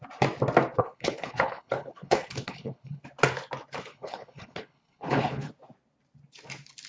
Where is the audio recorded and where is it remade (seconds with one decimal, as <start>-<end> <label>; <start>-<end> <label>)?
0.0-0.8 recorded; 0.8-3.0 remade; 3.0-3.9 recorded; 3.9-5.5 remade; 5.5-6.9 recorded